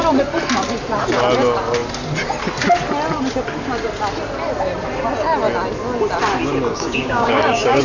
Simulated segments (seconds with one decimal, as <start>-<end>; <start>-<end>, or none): 6.7-7.8